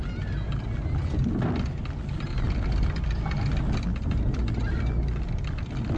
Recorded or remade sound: recorded